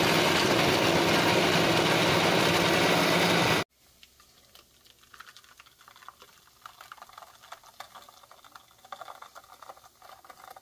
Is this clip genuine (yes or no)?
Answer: yes